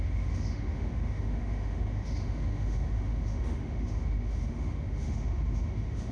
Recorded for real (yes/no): no